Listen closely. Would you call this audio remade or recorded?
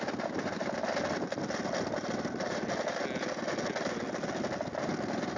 recorded